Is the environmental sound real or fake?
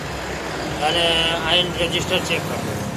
real